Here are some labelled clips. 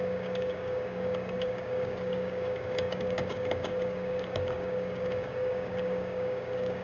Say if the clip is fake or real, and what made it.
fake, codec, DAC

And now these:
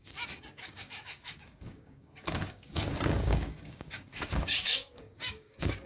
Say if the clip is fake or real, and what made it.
fake, codec, DAC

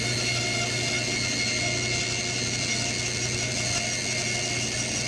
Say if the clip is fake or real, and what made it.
real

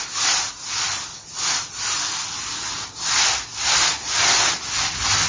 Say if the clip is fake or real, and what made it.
real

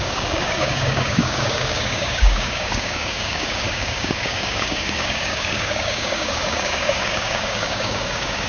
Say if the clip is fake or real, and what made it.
fake, codec, DAC